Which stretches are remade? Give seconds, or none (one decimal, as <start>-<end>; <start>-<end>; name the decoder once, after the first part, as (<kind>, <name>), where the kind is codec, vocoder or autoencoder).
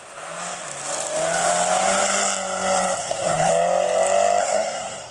3.0-3.5 (codec, SNAC); 4.4-5.1